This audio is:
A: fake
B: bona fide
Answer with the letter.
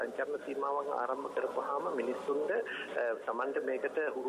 B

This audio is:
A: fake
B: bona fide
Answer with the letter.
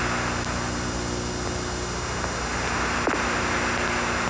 B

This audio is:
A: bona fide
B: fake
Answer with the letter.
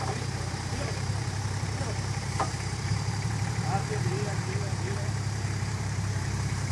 B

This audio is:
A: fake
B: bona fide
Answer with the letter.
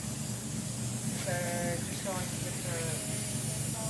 B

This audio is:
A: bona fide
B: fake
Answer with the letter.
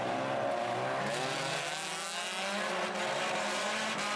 A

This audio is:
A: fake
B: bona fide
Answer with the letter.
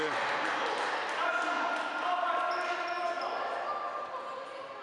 B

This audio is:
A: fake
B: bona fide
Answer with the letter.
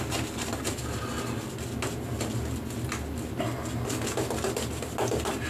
B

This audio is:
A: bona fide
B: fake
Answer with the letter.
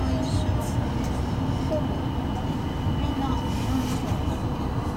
A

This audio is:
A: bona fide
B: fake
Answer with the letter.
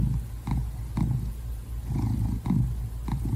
A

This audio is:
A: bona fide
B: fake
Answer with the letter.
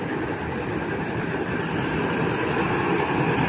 B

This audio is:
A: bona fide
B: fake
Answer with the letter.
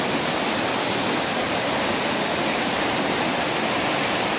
A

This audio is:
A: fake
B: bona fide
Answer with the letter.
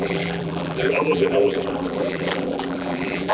A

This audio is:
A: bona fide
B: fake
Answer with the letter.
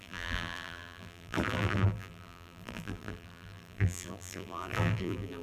B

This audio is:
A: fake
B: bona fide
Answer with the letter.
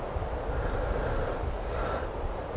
B